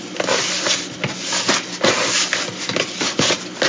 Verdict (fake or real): real